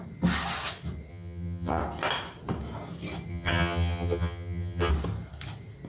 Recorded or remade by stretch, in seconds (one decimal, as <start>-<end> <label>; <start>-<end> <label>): 0.0-1.1 recorded; 1.1-1.8 remade; 1.8-3.3 recorded; 3.3-4.9 remade; 4.9-5.9 recorded